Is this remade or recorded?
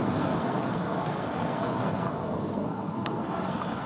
remade